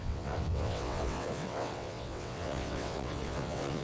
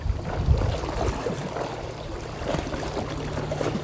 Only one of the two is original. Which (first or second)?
second